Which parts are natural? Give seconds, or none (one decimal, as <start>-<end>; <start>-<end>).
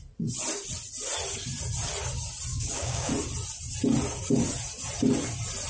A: 0.0-2.5; 3.1-5.7